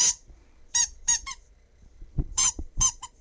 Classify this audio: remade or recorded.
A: remade